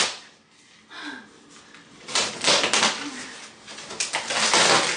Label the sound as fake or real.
real